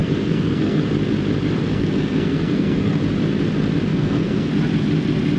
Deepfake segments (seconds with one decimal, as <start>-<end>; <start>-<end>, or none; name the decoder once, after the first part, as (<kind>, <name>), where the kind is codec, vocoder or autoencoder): 0.0-0.9 (codec, SNAC); 1.6-3.0; 3.9-4.5